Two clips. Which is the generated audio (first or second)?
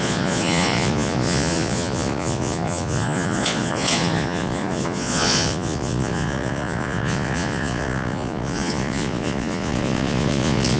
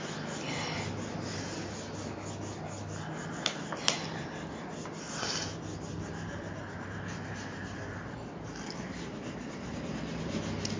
first